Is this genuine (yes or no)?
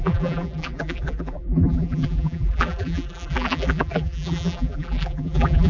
no